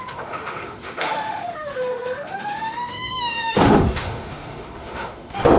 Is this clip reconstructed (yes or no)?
yes